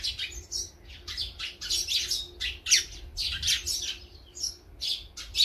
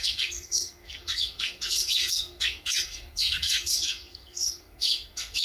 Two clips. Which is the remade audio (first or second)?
second